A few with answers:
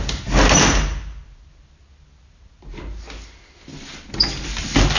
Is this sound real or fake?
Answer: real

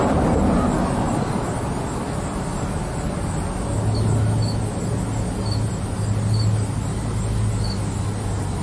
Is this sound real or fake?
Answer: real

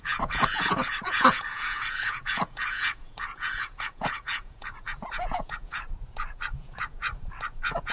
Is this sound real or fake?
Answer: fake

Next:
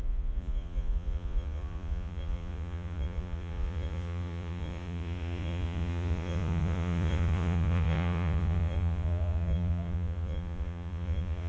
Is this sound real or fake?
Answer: fake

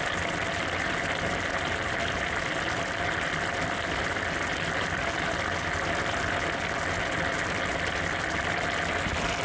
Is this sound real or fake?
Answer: real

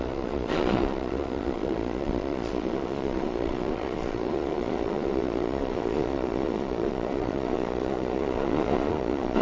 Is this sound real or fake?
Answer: fake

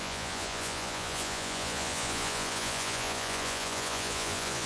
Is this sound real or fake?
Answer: fake